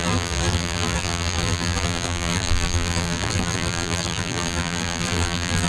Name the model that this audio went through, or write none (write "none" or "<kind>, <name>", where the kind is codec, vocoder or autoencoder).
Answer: vocoder, BigVGAN v2